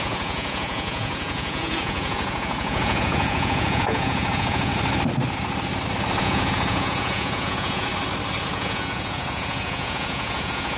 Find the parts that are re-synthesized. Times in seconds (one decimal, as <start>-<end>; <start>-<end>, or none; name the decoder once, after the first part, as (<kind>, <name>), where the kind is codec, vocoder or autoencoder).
0.0-4.7 (vocoder, Vocos); 6.2-7.9; 8.5-10.8